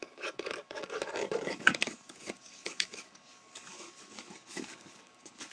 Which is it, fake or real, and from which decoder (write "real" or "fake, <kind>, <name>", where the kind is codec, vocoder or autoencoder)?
fake, codec, DAC